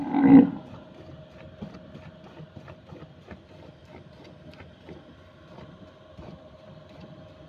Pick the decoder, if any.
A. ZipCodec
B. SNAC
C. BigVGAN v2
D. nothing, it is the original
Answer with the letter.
D